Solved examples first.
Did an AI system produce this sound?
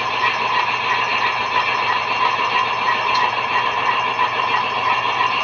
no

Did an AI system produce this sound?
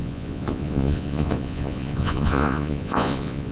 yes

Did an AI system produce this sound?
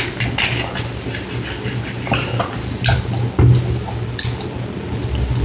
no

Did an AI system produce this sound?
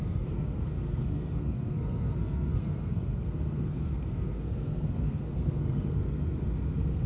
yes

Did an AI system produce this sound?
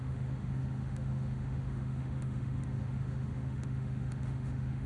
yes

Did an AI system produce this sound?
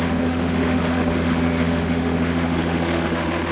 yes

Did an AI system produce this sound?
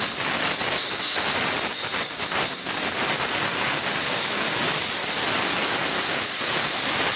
no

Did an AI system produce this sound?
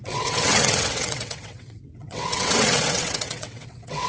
yes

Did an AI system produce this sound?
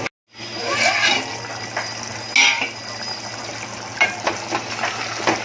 no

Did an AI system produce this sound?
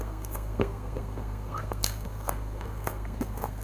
yes